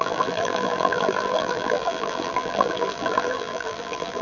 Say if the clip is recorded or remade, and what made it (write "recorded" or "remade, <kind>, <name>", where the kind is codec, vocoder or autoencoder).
remade, vocoder, BigVGAN v2